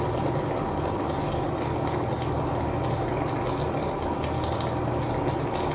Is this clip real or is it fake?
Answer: real